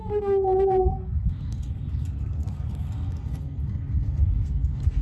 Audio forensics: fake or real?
fake